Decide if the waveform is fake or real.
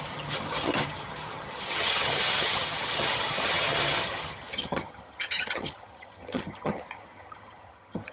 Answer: fake